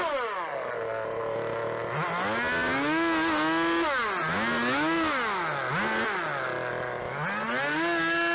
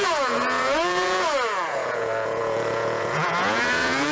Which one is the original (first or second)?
first